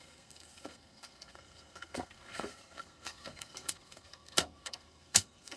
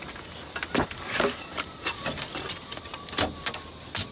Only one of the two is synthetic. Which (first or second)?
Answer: first